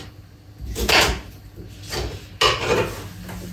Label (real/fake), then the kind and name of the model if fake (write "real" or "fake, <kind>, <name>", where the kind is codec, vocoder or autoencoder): real